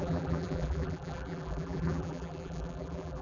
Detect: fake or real fake